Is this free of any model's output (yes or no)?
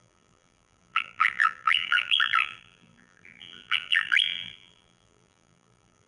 no